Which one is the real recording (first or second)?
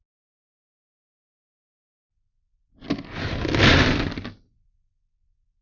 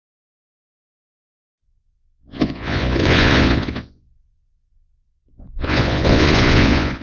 first